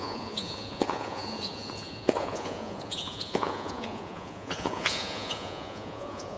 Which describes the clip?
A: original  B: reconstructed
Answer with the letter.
B